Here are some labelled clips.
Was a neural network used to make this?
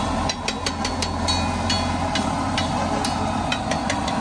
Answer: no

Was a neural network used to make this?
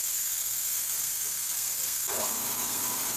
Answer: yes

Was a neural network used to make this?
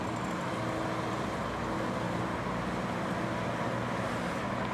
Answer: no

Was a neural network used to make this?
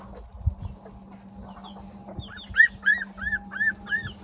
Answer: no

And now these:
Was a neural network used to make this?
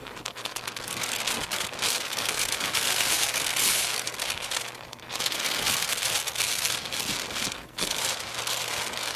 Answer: yes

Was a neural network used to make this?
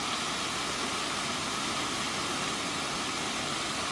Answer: no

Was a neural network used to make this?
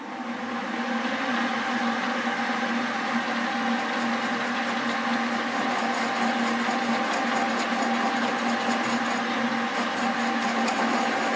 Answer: no